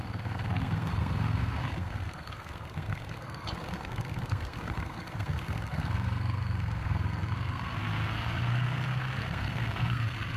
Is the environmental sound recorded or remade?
remade